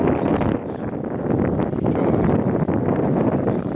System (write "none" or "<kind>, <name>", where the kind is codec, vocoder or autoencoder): none